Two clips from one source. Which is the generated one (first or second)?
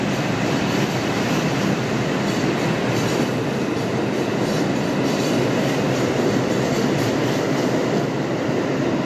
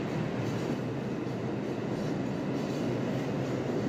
first